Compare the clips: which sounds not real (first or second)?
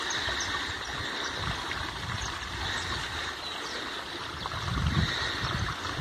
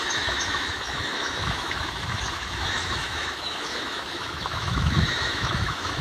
second